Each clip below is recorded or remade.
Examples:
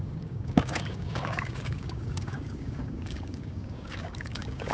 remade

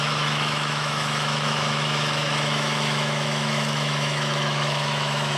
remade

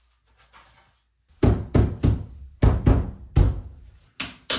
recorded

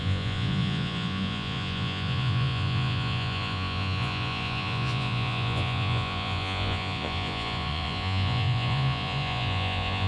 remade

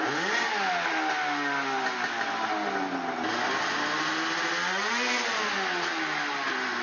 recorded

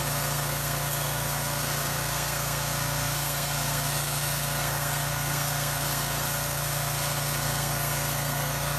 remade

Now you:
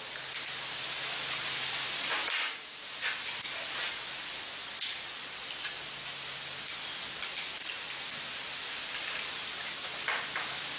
recorded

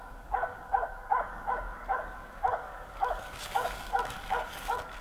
remade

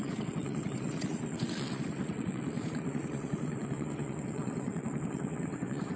remade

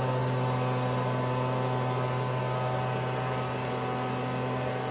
recorded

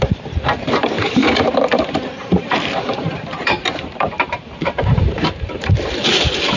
remade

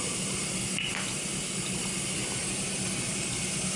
recorded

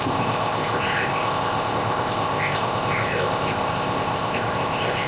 remade